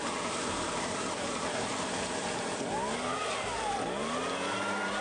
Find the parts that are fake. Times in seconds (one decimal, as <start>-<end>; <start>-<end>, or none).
0.0-5.0